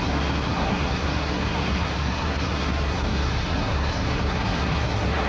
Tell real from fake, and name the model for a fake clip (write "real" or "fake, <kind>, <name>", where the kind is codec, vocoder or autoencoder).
fake, codec, SNAC